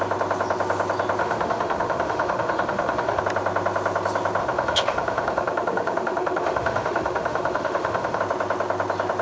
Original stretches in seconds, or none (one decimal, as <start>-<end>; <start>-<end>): 0.0-1.2; 3.2-4.4; 8.2-9.2